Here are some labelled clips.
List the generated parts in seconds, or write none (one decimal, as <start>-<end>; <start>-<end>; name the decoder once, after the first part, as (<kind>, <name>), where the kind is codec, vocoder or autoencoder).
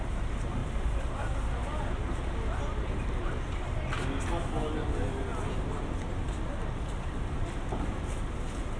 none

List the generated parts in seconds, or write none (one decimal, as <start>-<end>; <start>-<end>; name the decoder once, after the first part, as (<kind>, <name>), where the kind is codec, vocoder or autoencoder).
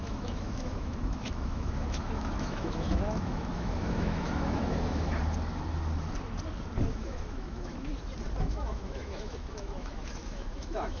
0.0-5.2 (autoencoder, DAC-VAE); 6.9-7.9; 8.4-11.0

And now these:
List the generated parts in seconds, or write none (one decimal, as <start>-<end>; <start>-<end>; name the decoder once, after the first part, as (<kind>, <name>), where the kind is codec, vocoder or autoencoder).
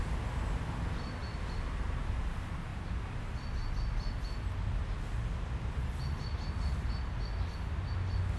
none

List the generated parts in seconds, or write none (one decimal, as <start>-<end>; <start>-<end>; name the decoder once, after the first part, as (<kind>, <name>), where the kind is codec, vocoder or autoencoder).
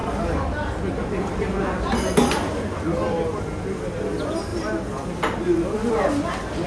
none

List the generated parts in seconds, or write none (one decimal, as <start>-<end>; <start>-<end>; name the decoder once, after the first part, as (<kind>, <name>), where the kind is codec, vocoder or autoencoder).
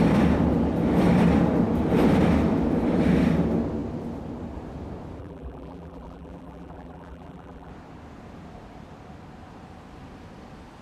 5.2-7.7 (vocoder, BigVGAN v2)